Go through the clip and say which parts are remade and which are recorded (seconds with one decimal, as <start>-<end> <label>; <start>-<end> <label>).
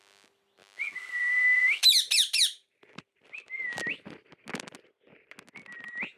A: 0.0-0.6 recorded; 0.6-4.3 remade; 4.3-6.2 recorded